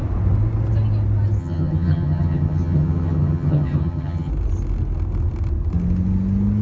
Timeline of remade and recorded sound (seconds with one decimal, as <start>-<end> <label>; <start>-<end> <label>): 0.0-1.4 recorded; 1.4-4.3 remade; 4.3-6.6 recorded